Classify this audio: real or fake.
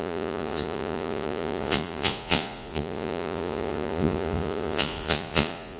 fake